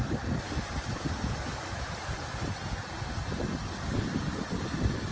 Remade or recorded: recorded